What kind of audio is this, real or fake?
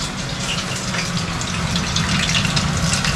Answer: real